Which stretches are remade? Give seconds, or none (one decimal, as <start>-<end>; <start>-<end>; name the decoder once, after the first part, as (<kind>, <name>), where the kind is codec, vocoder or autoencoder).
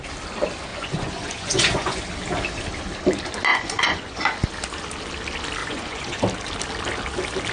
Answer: 0.7-2.0 (vocoder, Vocos); 3.5-4.2; 5.6-6.2